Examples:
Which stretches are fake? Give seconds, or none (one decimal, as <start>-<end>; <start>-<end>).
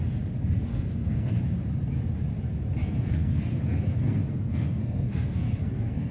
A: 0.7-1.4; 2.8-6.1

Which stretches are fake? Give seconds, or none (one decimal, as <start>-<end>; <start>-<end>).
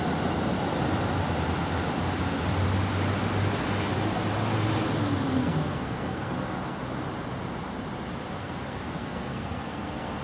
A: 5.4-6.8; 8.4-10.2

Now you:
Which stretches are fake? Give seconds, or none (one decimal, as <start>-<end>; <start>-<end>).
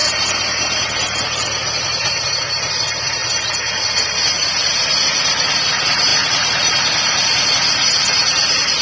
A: none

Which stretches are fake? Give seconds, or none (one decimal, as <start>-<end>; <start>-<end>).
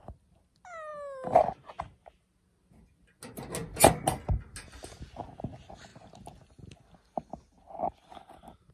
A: none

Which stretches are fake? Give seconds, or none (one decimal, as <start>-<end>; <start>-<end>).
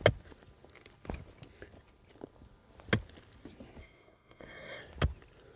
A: 3.8-4.8